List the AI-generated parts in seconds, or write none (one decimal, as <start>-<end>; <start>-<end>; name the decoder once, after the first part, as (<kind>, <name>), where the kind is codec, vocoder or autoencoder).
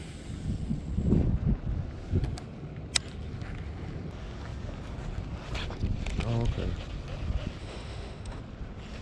7.6-8.4 (autoencoder, DAC-VAE)